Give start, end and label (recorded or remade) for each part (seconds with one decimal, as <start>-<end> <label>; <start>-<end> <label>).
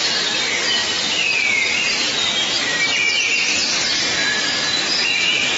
0.0-5.6 recorded